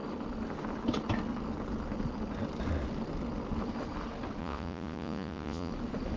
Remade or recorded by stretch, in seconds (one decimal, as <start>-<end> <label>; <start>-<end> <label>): 0.0-4.4 recorded; 4.4-5.7 remade; 5.7-6.2 recorded